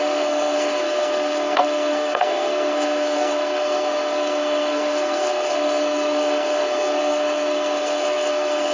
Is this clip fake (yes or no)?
yes